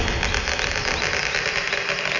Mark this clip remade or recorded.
recorded